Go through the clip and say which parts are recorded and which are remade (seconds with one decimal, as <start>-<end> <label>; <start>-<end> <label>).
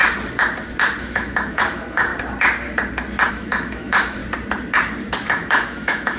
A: 0.0-1.0 recorded; 1.0-2.1 remade; 2.1-3.3 recorded; 3.3-4.2 remade; 4.2-5.3 recorded; 5.3-6.2 remade